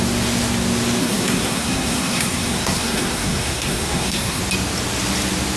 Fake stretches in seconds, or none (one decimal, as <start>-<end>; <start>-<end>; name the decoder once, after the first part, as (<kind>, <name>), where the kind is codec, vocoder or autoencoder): 1.0-4.4 (codec, SNAC)